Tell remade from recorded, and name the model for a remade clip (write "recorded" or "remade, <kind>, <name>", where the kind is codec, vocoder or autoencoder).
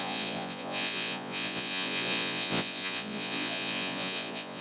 remade, vocoder, Vocos